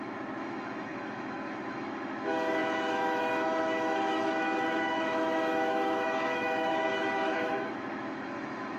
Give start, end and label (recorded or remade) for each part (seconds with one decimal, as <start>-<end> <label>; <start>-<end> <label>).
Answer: 0.0-8.8 remade